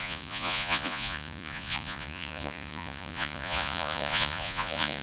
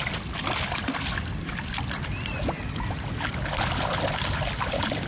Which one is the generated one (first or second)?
first